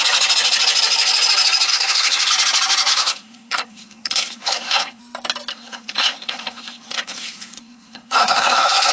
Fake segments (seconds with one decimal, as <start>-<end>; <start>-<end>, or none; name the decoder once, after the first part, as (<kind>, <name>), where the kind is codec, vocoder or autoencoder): 1.7-2.3 (codec, SNAC); 2.9-5.0; 5.5-8.9